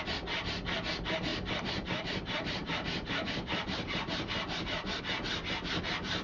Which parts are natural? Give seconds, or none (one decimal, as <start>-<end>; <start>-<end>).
0.0-1.3; 5.0-6.2

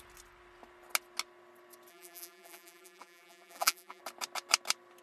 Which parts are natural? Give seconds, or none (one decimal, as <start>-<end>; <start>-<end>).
0.0-1.9; 4.0-5.0

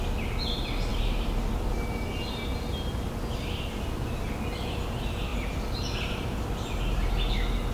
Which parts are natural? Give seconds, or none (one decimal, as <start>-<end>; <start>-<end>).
0.0-0.9; 1.5-7.7

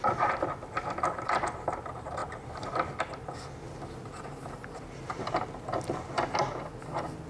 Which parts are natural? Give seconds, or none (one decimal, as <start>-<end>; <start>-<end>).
0.0-7.3

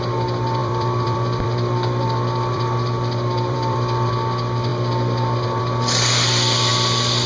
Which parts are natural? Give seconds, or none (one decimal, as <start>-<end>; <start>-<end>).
0.0-0.6; 4.1-7.3

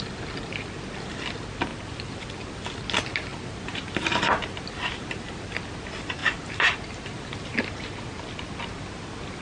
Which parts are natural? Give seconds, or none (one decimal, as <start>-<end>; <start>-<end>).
0.0-1.7; 2.6-3.3; 5.7-6.2; 8.0-9.4

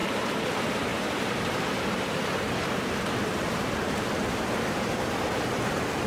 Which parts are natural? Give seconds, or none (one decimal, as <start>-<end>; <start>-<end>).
none

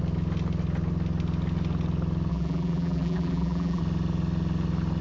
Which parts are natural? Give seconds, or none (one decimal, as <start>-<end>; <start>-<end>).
0.0-2.3; 3.8-5.0